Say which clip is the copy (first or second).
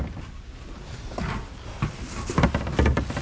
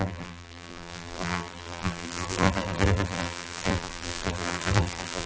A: second